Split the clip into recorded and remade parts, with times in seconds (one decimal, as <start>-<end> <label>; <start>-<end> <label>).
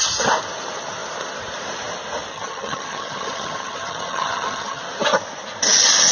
0.0-2.3 recorded; 2.3-4.8 remade; 4.8-6.1 recorded